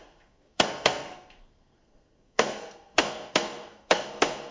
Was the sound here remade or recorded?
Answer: remade